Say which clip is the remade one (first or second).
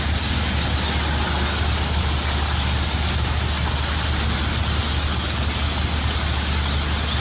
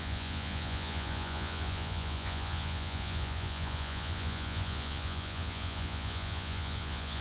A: second